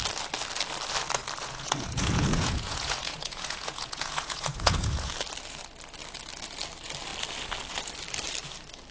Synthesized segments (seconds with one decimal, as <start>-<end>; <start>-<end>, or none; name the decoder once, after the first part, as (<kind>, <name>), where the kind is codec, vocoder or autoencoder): 1.4-5.1 (vocoder, Vocos)